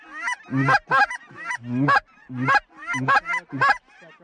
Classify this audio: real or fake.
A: real